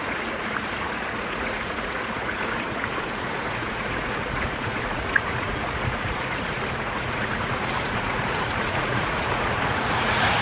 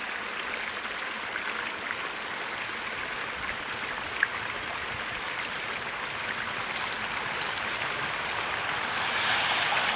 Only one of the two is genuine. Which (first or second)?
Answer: second